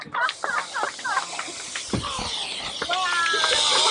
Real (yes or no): yes